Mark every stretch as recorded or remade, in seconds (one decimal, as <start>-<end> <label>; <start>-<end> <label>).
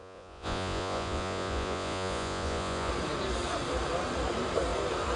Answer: 0.0-2.9 remade; 2.9-5.2 recorded